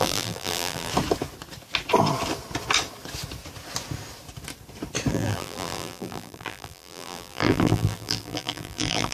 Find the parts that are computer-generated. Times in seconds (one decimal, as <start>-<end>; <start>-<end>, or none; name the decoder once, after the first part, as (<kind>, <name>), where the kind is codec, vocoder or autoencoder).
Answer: 0.0-0.9 (vocoder, BigVGAN v2); 5.1-9.1